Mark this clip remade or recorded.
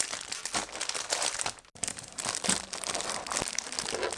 recorded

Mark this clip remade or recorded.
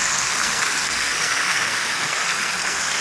remade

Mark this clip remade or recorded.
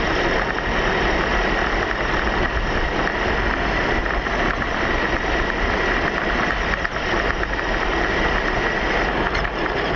recorded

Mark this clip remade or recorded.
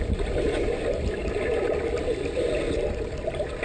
recorded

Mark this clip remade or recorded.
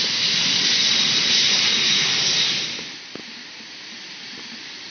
recorded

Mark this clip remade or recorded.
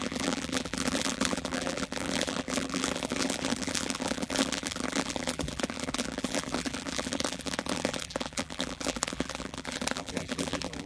remade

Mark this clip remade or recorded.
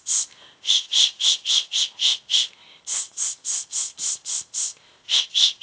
remade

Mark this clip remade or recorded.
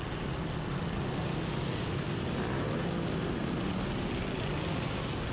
recorded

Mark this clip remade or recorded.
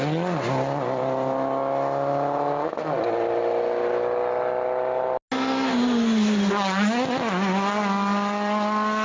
recorded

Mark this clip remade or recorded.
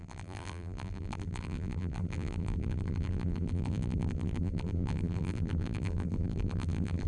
remade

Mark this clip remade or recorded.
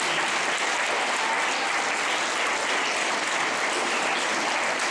recorded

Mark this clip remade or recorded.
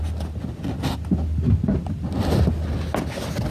recorded